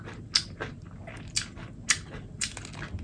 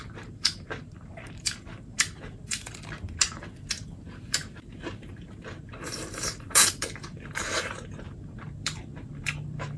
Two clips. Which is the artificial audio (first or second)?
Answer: second